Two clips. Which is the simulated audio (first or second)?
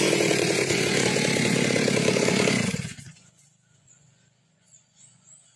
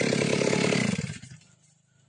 first